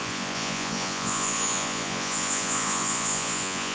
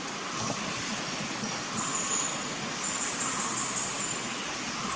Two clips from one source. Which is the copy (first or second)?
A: first